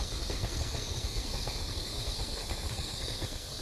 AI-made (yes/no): yes